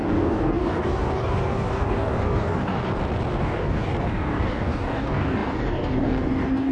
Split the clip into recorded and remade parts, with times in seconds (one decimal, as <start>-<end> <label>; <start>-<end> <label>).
0.0-2.9 remade; 2.9-3.4 recorded; 3.4-6.7 remade